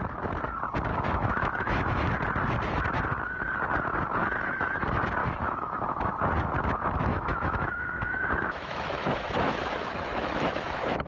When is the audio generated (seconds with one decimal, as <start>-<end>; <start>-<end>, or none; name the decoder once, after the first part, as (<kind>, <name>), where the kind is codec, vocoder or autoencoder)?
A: 0.9-2.1 (autoencoder, DAC-VAE); 4.2-4.8; 5.2-6.1; 7.1-11.1